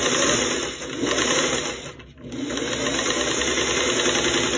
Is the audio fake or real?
real